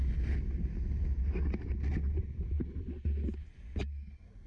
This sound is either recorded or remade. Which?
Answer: recorded